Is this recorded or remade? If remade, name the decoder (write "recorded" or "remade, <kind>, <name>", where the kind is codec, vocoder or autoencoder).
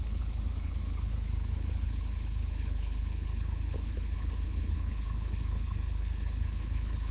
remade, codec, HILCodec